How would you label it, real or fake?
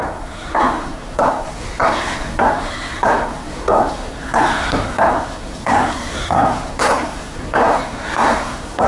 fake